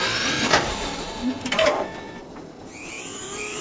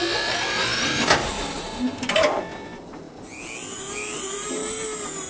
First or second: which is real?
second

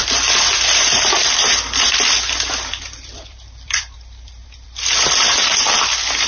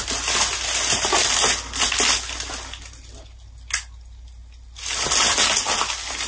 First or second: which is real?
second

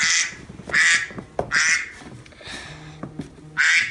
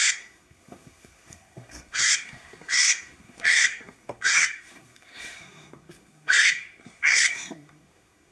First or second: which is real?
first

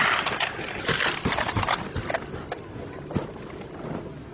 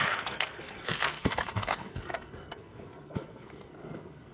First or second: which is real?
first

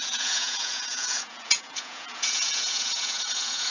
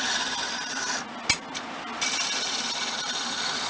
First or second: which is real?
second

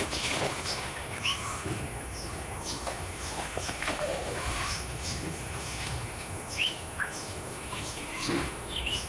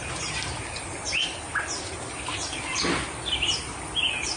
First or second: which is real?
second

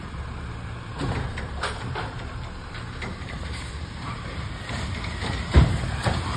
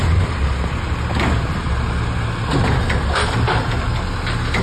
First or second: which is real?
second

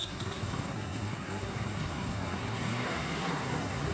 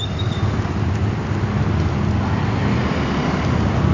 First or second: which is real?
second